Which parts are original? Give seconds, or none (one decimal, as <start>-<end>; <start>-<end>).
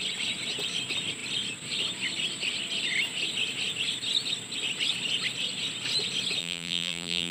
0.0-6.4